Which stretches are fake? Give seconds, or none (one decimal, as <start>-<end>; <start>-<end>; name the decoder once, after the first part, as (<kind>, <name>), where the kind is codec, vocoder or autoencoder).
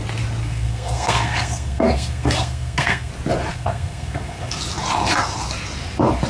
0.4-3.1 (codec, SNAC); 3.5-4.6